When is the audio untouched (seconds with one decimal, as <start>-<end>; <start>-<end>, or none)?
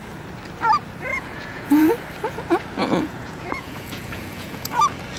0.0-1.1; 1.9-2.8; 4.8-5.2